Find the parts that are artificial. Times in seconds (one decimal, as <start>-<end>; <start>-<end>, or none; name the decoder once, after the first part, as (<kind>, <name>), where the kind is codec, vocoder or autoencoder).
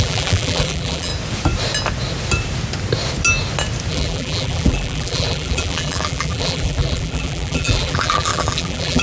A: 0.0-1.1 (vocoder, BigVGAN v2); 3.9-9.0